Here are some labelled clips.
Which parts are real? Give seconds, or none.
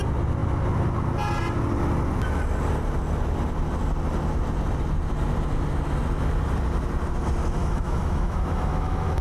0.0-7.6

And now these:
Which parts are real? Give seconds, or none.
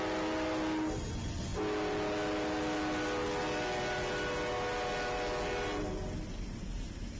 0.0-7.2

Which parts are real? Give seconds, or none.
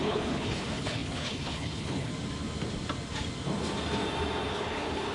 2.1-4.5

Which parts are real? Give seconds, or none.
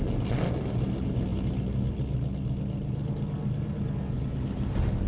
0.0-5.1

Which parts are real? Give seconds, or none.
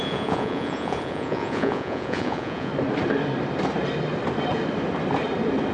2.7-5.7